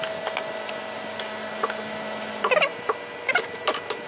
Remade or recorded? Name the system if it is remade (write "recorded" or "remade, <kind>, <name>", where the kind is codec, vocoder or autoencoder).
recorded